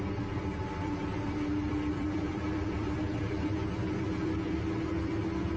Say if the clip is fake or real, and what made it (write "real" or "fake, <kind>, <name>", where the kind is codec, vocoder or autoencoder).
fake, vocoder, BigVGAN v2